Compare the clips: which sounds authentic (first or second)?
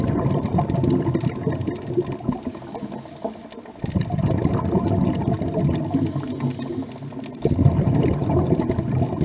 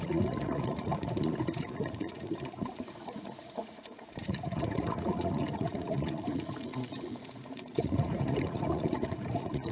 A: first